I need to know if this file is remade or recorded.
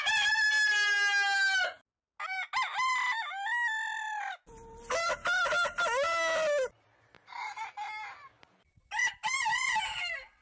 recorded